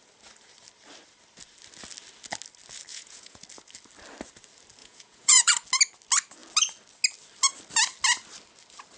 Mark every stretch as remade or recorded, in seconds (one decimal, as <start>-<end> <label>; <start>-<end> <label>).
0.0-2.9 recorded; 2.9-3.4 remade; 3.4-4.8 recorded; 4.8-5.5 remade; 5.5-9.0 recorded